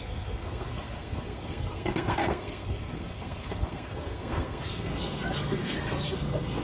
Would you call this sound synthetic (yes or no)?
yes